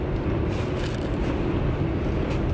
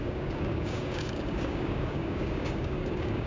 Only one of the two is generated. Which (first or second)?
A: second